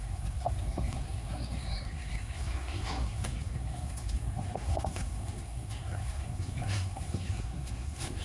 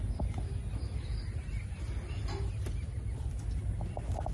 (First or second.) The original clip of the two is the second